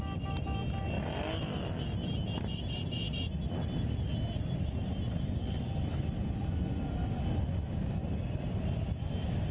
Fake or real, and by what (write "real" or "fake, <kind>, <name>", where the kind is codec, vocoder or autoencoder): real